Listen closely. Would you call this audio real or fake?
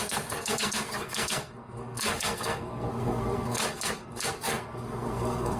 fake